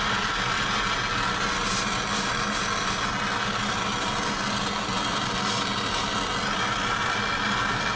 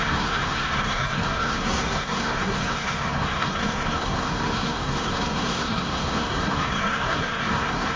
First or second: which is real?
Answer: first